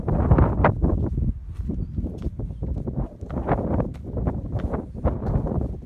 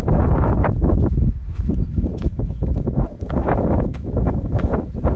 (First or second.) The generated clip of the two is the second